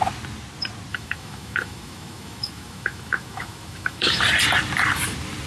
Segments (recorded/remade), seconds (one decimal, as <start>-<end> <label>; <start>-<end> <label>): 0.0-0.9 recorded; 0.9-4.2 remade; 4.2-5.5 recorded